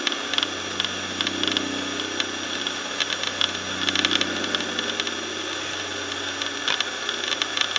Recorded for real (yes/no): yes